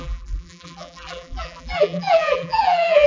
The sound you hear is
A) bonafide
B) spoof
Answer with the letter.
B